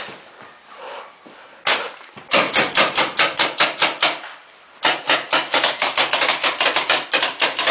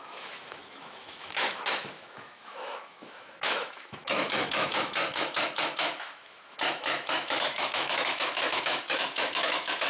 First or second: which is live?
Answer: first